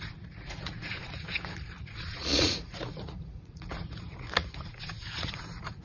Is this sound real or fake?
fake